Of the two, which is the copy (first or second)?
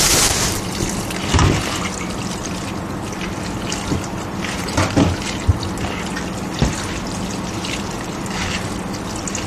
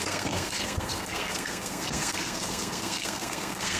second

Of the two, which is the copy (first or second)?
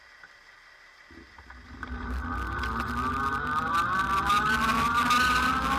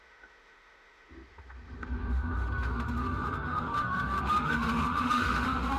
second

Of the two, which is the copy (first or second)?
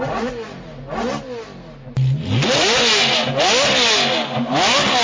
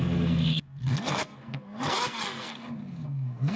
second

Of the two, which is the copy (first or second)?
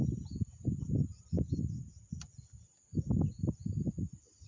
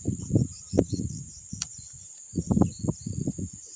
second